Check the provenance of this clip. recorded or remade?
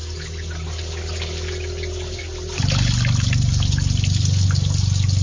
recorded